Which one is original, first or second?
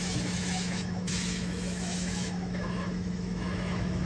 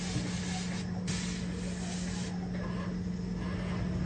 second